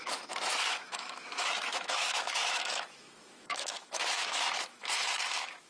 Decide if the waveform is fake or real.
fake